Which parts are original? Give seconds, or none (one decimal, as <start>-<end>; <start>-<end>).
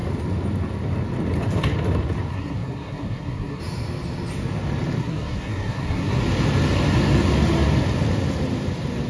0.0-2.3; 3.6-5.0; 6.2-9.1